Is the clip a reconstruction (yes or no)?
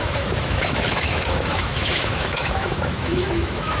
yes